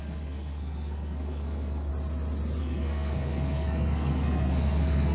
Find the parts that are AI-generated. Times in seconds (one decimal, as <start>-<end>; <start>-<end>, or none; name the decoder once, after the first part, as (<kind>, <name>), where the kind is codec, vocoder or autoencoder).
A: 0.0-1.9 (codec, SNAC); 2.6-5.1